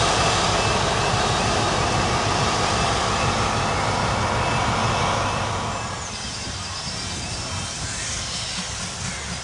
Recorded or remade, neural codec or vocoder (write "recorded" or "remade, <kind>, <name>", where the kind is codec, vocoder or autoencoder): recorded